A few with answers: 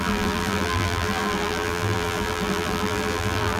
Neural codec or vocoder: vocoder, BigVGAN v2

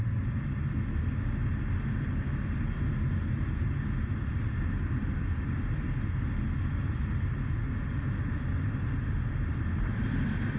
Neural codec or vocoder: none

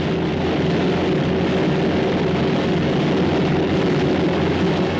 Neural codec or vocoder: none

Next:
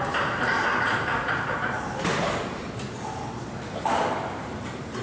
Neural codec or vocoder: vocoder, BigVGAN v2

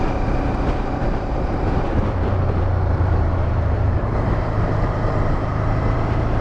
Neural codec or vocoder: vocoder, BigVGAN v2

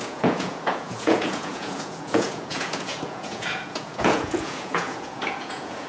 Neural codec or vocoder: vocoder, Vocos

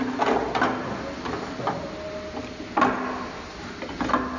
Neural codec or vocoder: none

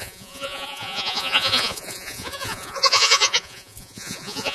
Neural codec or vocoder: vocoder, Vocos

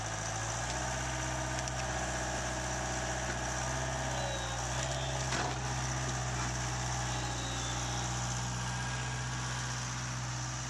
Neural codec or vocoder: none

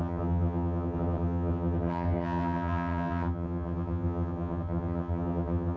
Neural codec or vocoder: vocoder, HiFi-GAN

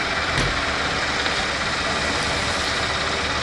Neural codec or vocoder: none